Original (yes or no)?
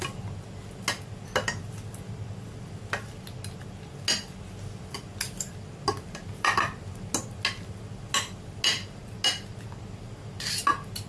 yes